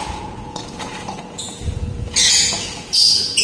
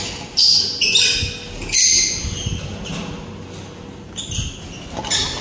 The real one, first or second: second